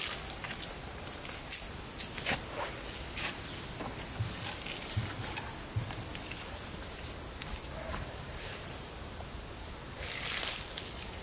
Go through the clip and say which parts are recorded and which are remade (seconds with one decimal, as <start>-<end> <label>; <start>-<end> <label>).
0.0-7.9 recorded; 7.9-8.7 remade; 8.7-11.2 recorded